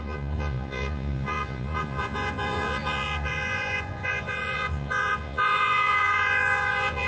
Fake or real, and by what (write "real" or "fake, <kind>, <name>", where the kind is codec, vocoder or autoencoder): fake, vocoder, Vocos